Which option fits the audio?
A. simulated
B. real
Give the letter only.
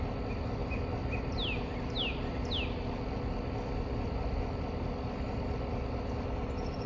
B